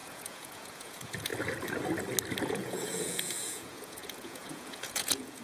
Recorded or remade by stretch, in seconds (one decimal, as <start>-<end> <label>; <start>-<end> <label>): 0.0-1.3 remade; 1.3-2.4 recorded; 2.4-5.4 remade